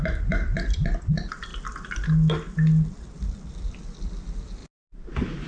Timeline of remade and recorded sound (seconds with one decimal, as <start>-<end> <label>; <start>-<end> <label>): 0.0-5.5 recorded